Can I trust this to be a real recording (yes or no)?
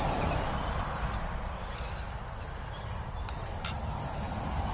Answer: yes